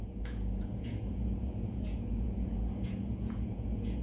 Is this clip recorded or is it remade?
remade